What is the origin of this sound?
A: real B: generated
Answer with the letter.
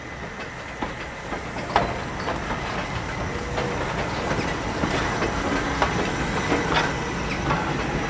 A